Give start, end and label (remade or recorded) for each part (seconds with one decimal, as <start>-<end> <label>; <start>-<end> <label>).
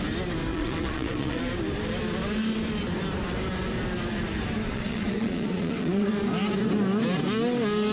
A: 0.0-0.5 recorded; 0.5-1.4 remade; 1.4-4.7 recorded; 4.7-6.1 remade; 6.1-7.9 recorded